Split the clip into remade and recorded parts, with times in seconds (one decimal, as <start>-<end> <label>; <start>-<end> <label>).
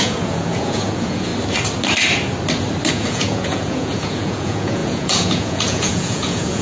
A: 0.0-1.3 remade; 1.3-2.9 recorded; 2.9-6.6 remade